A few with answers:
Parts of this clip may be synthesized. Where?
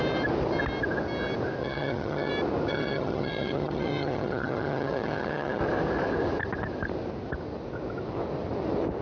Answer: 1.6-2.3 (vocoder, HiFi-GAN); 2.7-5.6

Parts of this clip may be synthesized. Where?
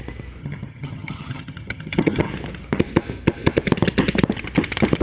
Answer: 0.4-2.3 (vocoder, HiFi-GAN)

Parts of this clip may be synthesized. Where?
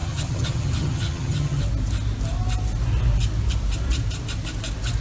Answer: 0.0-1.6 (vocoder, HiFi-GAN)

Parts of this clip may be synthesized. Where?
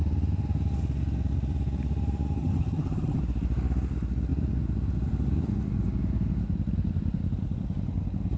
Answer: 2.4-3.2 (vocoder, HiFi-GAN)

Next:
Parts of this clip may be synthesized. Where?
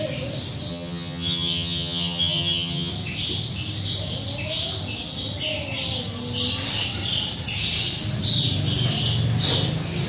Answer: 0.7-2.9 (vocoder, HiFi-GAN)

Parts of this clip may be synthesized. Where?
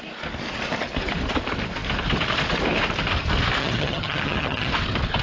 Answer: 3.6-4.7 (vocoder, HiFi-GAN)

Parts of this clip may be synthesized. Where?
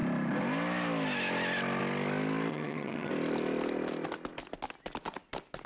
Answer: 2.5-3.1 (vocoder, HiFi-GAN)